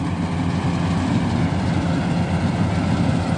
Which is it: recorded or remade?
recorded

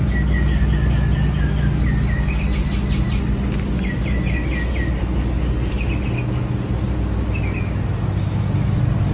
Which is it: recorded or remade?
recorded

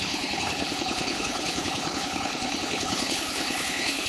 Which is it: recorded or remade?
remade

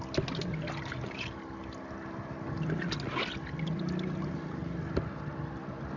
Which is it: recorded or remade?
recorded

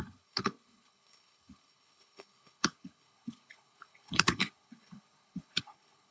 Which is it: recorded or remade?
remade